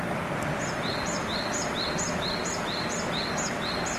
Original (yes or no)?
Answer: yes